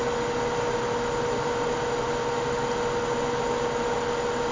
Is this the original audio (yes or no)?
yes